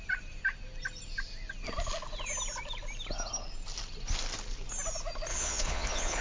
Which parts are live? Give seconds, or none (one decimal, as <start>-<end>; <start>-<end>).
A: 0.0-5.3